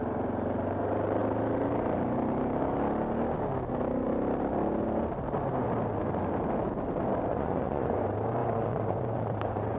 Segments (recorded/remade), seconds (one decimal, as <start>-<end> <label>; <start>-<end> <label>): 0.0-7.3 recorded; 7.3-8.0 remade; 8.0-8.4 recorded; 8.4-9.8 remade